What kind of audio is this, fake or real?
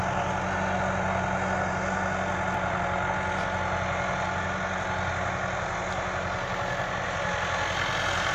real